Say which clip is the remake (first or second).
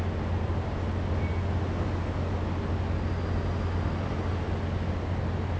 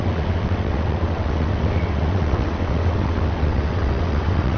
second